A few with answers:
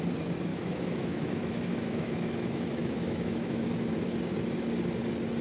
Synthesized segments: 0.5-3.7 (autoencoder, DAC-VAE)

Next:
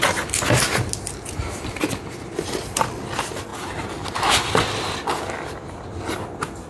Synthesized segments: none